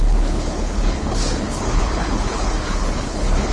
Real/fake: fake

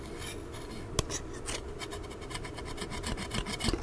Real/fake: real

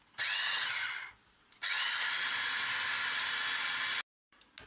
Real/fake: real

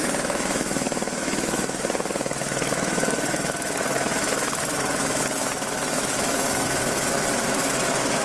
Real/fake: fake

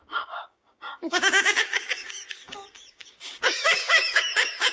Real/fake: fake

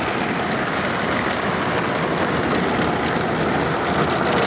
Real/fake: real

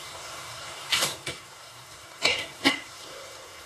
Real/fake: fake